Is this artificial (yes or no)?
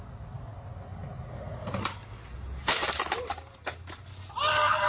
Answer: no